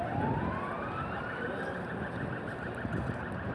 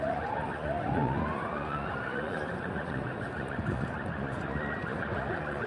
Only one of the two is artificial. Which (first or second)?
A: second